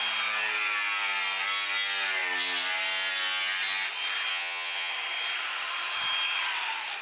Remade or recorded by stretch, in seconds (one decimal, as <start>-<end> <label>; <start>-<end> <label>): 0.0-4.3 recorded; 4.3-4.9 remade; 4.9-7.0 recorded